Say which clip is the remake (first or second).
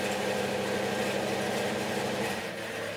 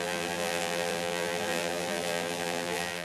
second